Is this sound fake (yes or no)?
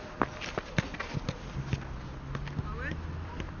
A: no